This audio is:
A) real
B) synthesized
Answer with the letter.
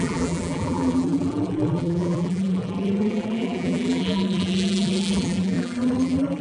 B